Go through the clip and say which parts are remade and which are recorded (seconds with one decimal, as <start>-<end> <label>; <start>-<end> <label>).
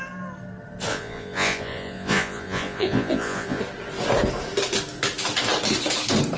0.0-0.9 recorded; 0.9-3.6 remade; 3.6-6.4 recorded